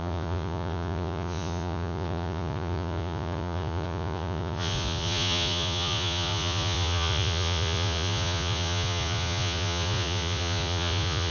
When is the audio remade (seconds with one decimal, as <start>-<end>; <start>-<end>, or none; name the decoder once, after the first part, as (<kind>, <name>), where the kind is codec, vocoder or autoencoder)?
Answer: 0.0-11.3 (vocoder, Vocos)